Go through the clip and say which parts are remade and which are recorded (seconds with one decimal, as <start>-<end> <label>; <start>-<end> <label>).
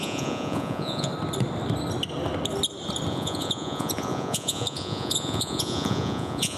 0.0-1.1 remade; 1.1-3.1 recorded; 3.1-6.6 remade